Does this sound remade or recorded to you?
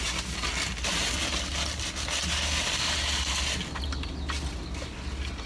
recorded